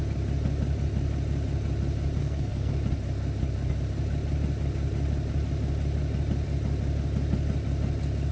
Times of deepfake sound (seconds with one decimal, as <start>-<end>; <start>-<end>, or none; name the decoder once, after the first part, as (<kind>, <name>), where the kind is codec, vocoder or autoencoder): 2.2-2.7 (codec, SNAC)